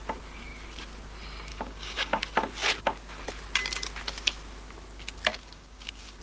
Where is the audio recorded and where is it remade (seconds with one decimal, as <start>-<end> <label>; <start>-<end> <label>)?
0.0-1.5 recorded; 1.5-2.2 remade; 2.2-5.3 recorded; 5.3-6.2 remade